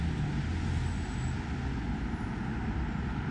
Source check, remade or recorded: recorded